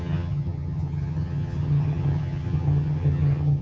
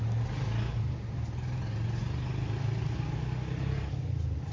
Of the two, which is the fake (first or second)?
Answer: first